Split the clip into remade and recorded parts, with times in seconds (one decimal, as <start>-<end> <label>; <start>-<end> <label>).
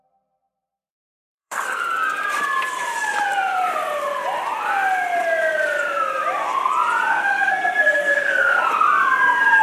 0.0-0.9 recorded; 0.9-1.8 remade; 1.8-7.1 recorded; 7.1-8.6 remade; 8.6-9.6 recorded